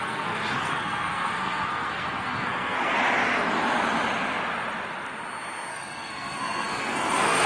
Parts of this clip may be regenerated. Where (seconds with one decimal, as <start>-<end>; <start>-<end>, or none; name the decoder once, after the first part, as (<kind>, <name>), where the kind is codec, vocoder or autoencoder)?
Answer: 0.0-2.9 (codec, SNAC); 5.7-7.5